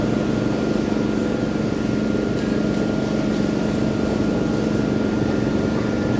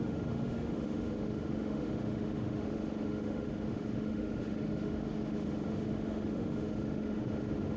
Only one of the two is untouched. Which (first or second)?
first